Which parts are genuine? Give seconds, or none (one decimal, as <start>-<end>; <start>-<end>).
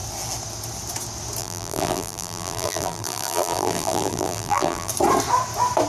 0.0-1.4; 4.9-5.9